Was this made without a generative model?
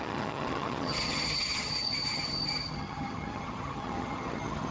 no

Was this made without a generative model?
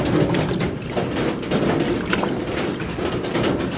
yes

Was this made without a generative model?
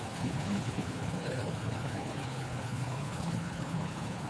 no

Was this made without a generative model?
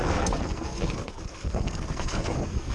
no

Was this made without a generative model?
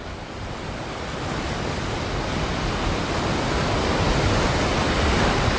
yes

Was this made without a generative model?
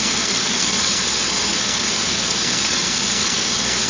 no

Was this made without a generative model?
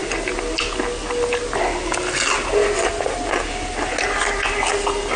yes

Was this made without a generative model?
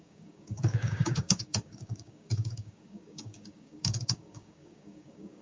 no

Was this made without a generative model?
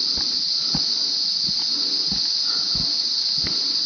yes